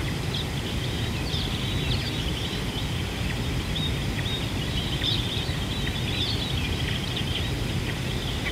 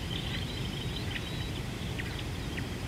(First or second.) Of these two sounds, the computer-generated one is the first